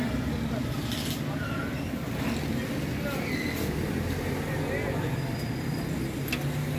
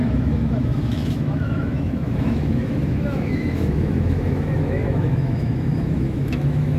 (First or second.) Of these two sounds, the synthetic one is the second